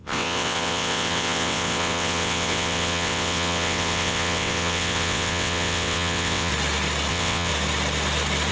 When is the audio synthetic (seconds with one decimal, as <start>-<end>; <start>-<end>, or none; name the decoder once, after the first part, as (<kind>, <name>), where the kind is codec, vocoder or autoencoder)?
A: 0.0-6.5 (vocoder, WaveNeXt); 7.1-7.5